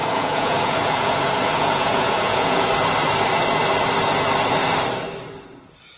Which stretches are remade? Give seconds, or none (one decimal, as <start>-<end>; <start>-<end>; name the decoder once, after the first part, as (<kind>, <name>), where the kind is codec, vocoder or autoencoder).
0.0-2.7 (vocoder, Vocos)